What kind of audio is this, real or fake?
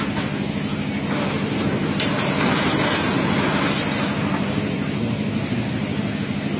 real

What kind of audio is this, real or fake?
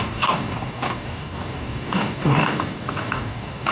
fake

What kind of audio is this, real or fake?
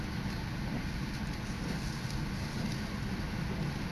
real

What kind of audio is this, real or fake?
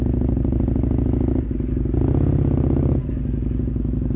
real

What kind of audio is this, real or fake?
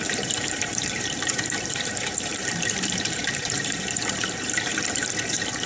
fake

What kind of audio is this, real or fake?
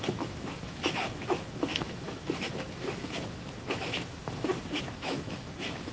fake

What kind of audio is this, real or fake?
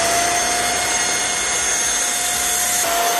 real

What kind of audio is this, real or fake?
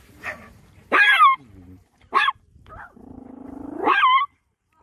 fake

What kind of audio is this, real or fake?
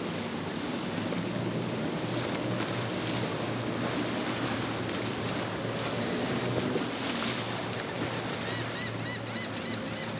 real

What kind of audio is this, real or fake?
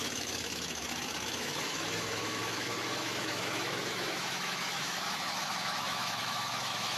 fake